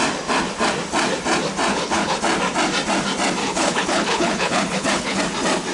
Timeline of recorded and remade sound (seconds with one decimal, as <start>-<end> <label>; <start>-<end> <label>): 0.0-1.7 recorded; 1.7-2.2 remade; 2.2-3.4 recorded; 3.4-5.2 remade; 5.2-5.7 recorded